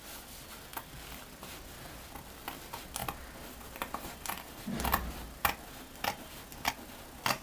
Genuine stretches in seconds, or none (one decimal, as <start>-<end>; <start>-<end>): 0.0-7.4